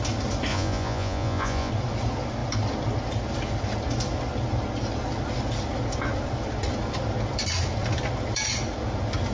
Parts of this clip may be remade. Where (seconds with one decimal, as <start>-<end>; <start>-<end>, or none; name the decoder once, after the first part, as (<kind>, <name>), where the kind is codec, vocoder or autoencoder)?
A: 0.5-1.7 (vocoder, Vocos)